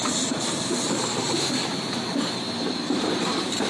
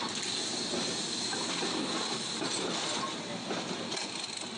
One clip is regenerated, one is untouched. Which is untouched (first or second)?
second